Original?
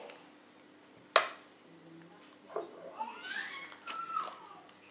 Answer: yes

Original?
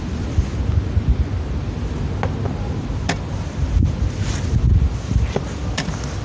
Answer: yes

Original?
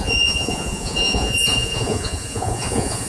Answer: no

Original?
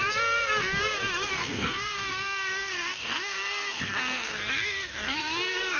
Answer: no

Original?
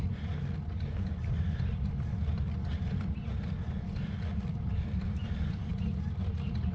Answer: yes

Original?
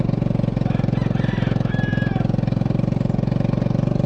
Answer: yes